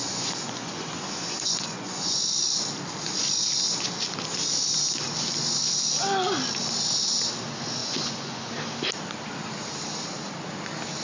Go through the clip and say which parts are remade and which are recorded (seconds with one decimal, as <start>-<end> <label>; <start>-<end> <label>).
0.0-2.2 remade; 2.2-7.8 recorded; 7.8-8.5 remade; 8.5-11.0 recorded